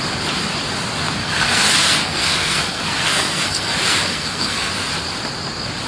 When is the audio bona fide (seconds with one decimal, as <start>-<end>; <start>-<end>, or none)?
0.0-1.2; 4.7-5.9